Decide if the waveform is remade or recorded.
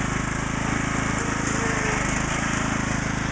recorded